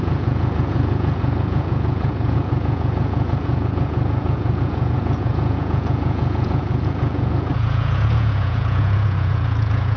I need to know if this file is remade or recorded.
remade